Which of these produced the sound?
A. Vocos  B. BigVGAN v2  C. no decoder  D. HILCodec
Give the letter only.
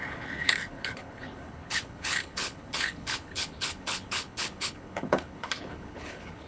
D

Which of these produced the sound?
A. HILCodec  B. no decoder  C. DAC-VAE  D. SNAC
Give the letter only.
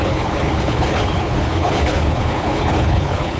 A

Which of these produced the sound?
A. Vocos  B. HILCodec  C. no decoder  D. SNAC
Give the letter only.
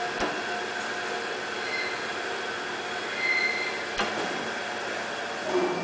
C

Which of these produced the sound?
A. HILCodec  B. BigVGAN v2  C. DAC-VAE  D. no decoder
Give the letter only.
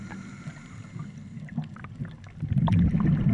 D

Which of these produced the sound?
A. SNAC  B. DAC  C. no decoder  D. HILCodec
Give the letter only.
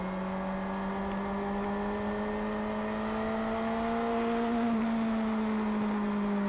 C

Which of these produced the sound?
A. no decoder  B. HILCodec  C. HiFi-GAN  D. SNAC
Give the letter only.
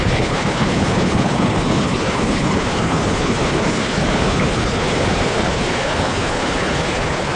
B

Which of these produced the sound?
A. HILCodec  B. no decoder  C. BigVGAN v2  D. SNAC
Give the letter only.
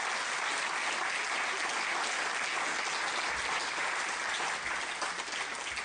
B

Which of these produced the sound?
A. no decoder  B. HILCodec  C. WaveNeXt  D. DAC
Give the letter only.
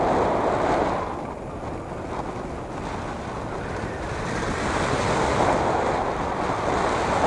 A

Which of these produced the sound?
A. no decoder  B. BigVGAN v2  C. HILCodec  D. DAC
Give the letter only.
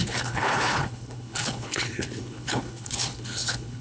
C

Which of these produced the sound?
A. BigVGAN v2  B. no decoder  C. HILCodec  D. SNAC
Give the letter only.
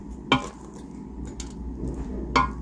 B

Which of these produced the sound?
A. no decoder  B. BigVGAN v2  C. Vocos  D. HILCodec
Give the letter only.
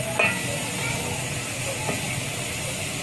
A